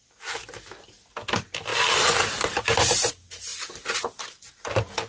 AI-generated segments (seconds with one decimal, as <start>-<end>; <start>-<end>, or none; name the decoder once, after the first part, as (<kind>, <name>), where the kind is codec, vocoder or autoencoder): none